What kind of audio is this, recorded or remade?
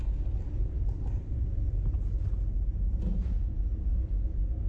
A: recorded